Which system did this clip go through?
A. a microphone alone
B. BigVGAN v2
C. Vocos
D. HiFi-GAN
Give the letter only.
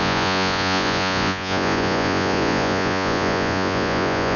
C